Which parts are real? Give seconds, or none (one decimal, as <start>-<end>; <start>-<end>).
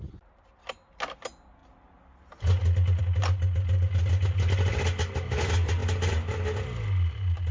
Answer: 0.0-7.5